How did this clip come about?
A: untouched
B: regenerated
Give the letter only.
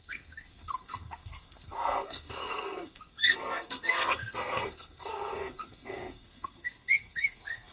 B